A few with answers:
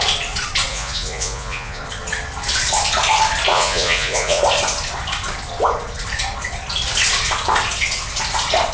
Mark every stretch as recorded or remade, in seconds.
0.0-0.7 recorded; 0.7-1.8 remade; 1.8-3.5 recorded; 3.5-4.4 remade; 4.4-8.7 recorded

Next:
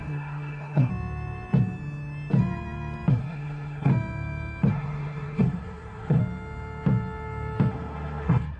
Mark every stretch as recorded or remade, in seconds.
0.0-0.9 remade; 0.9-3.1 recorded; 3.1-3.9 remade; 3.9-4.7 recorded; 4.7-6.2 remade; 6.2-7.7 recorded; 7.7-8.6 remade

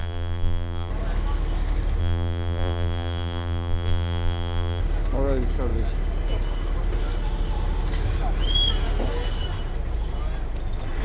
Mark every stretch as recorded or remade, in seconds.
0.0-0.9 remade; 0.9-2.0 recorded; 2.0-4.8 remade; 4.8-11.0 recorded

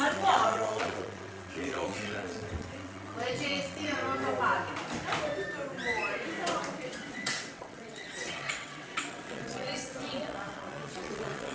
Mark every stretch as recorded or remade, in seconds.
0.0-4.0 remade; 4.0-7.1 recorded; 7.1-11.5 remade

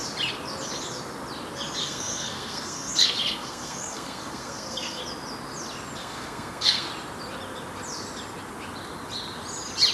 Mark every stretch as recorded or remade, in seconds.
0.0-1.8 recorded; 1.8-5.0 remade; 5.0-6.0 recorded; 6.0-6.9 remade; 6.9-9.9 recorded

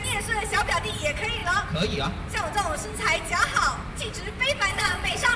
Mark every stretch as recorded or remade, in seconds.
0.0-4.7 recorded; 4.7-5.4 remade

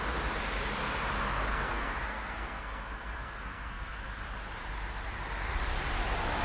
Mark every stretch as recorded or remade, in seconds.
0.0-1.5 recorded; 1.5-4.2 remade; 4.2-6.4 recorded